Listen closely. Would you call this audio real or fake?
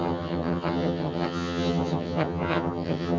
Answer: fake